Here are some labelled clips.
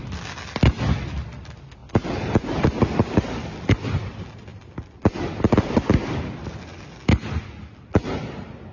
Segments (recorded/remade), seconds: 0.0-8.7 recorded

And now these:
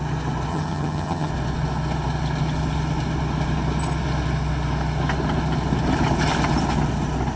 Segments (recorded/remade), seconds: 0.0-0.5 recorded; 0.5-1.3 remade; 1.3-7.4 recorded

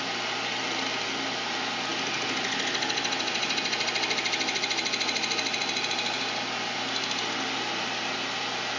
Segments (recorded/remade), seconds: 0.0-8.8 recorded

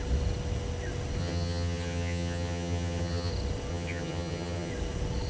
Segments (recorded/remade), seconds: 0.0-1.2 recorded; 1.2-3.3 remade; 3.3-3.7 recorded; 3.7-4.7 remade; 4.7-5.3 recorded

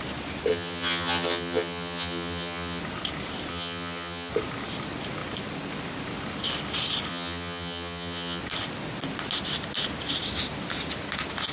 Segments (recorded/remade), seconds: 0.0-0.5 recorded; 0.5-2.8 remade; 2.8-3.5 recorded; 3.5-4.3 remade; 4.3-7.1 recorded; 7.1-8.4 remade; 8.4-11.5 recorded